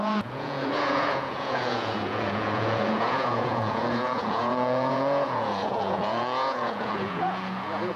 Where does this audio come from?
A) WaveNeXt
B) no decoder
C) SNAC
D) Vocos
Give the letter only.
D